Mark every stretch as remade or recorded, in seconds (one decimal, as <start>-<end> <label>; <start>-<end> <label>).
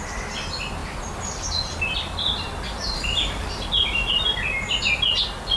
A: 0.0-5.6 recorded